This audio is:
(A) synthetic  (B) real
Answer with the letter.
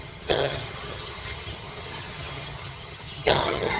A